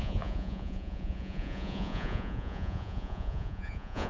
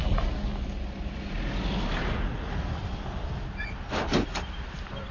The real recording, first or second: second